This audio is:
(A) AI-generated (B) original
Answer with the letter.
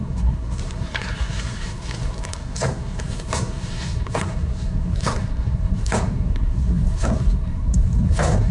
A